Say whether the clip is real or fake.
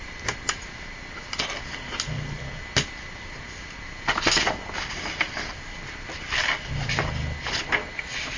real